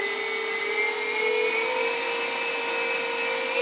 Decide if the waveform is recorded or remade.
recorded